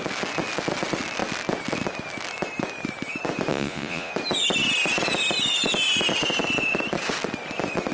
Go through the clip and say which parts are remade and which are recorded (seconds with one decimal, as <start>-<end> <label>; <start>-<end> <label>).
0.0-3.5 recorded; 3.5-4.1 remade; 4.1-7.9 recorded